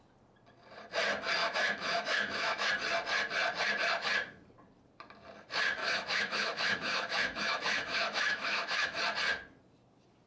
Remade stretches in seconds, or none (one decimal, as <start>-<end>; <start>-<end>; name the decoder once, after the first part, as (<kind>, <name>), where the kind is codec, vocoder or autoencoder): 1.4-2.7 (autoencoder, DAC-VAE); 5.8-9.0